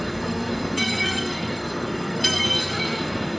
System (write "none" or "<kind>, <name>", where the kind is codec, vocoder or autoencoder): codec, SNAC